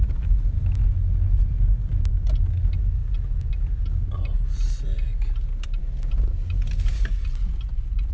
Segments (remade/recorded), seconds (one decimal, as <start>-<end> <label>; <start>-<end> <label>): 0.0-8.1 recorded